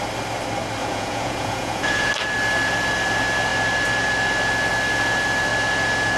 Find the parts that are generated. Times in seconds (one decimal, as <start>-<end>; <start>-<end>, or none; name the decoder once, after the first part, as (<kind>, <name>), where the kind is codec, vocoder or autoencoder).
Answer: 0.8-2.1 (vocoder, Vocos)